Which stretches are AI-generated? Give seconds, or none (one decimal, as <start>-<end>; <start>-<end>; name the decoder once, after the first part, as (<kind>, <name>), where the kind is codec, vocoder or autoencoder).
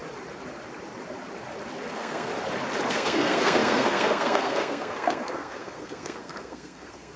1.9-2.3 (codec, SNAC); 2.9-7.2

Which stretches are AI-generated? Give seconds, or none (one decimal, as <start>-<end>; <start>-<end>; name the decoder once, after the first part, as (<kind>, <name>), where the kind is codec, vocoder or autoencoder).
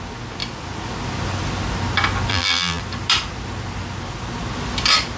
2.3-2.8 (vocoder, BigVGAN v2)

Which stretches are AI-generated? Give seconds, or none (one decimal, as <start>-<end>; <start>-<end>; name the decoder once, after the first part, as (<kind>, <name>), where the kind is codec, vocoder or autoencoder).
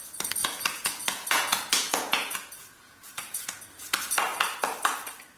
0.4-3.6 (vocoder, Vocos)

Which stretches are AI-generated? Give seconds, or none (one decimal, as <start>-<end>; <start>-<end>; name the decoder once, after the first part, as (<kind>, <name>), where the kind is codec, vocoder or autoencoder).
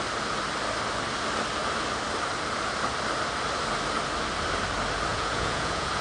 5.1-6.0 (vocoder, Vocos)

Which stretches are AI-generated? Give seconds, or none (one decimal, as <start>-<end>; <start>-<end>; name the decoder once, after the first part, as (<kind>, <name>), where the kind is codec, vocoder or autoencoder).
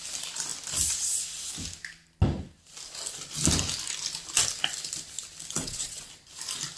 5.6-6.1 (vocoder, WaveNeXt)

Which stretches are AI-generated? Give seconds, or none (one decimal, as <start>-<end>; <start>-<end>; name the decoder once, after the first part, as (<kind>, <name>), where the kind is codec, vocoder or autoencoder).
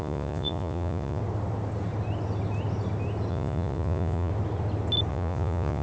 0.0-1.2 (vocoder, Vocos); 3.3-4.3; 5.1-5.8